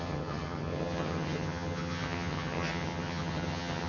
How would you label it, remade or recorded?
remade